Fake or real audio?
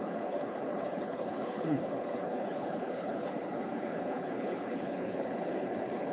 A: fake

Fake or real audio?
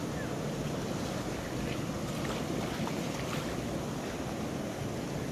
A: fake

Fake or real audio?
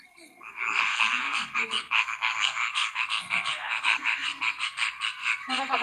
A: fake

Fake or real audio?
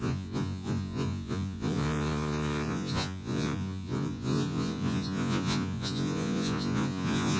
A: fake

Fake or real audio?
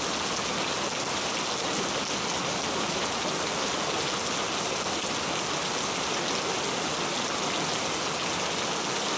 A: real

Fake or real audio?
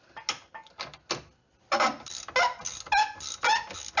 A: real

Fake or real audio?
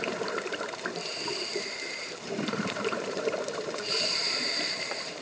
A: fake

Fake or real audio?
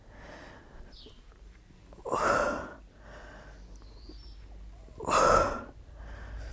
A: real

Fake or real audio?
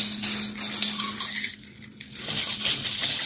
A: real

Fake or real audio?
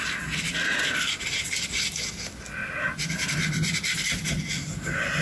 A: real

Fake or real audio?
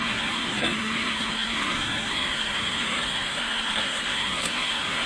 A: fake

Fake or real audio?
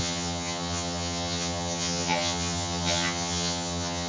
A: fake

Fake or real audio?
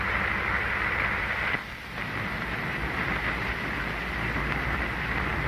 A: real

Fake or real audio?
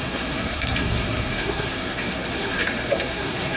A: fake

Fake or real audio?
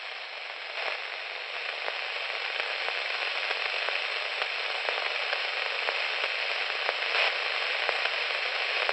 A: real